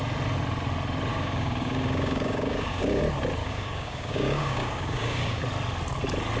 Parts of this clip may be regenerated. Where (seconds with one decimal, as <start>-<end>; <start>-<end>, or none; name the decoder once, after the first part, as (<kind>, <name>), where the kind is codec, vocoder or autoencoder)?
1.1-3.0 (codec, DAC); 3.4-5.4